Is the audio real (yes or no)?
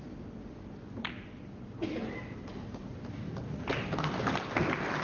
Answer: yes